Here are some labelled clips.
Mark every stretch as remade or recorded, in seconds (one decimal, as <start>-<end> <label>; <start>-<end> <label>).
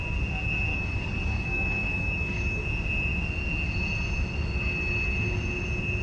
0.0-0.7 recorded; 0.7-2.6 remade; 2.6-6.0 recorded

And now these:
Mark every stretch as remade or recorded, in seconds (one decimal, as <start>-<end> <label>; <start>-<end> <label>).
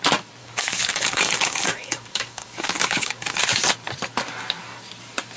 0.0-0.4 recorded; 0.4-3.4 remade; 3.4-5.4 recorded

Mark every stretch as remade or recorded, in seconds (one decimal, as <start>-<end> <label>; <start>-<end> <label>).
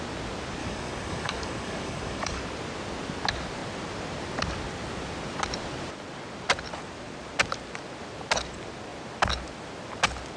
0.0-0.6 recorded; 0.6-2.4 remade; 2.4-10.4 recorded